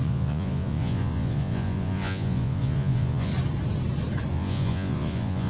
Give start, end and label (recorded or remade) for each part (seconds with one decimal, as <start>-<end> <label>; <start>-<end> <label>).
0.0-3.3 remade; 3.3-4.3 recorded; 4.3-5.5 remade